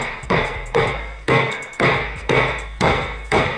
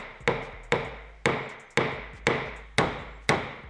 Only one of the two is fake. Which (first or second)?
first